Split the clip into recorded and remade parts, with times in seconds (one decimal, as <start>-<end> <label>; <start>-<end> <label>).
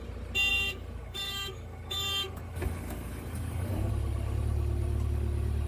0.0-0.5 recorded; 0.5-3.9 remade; 3.9-5.7 recorded